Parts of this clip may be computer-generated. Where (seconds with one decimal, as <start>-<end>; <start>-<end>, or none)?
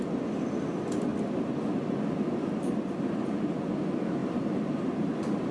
none